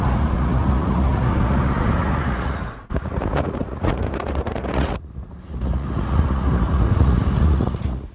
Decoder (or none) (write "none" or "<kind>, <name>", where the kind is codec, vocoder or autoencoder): vocoder, Vocos